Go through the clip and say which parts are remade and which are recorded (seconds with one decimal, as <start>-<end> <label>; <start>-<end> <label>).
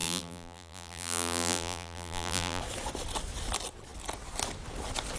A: 0.0-2.6 remade; 2.6-5.2 recorded